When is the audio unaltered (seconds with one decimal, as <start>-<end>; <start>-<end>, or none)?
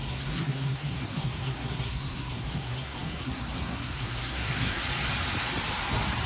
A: 4.8-6.3